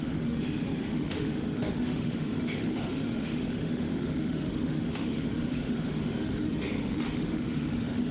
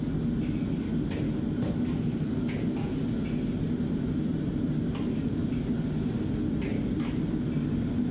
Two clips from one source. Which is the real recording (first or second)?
second